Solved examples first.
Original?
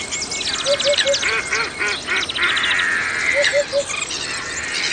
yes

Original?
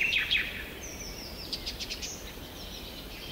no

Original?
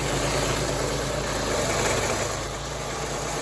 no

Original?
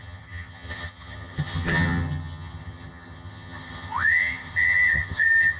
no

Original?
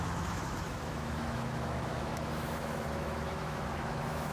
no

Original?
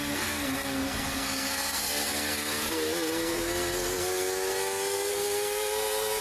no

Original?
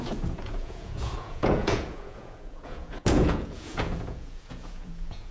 no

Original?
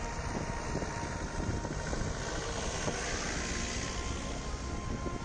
yes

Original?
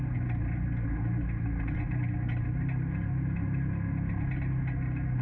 yes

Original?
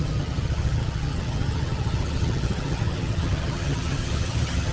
no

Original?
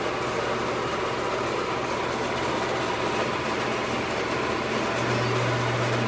yes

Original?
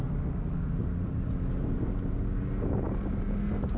yes